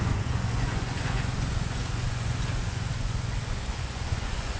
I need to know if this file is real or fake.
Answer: fake